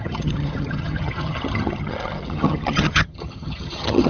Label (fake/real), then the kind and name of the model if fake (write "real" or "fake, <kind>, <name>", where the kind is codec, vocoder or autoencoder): fake, vocoder, HiFi-GAN